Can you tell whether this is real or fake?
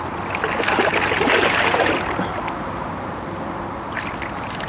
real